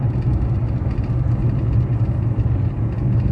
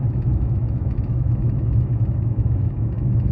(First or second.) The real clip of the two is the first